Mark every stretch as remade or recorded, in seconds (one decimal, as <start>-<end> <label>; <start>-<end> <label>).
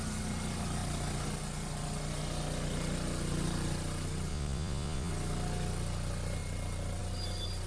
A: 0.0-4.3 recorded; 4.3-5.1 remade; 5.1-7.7 recorded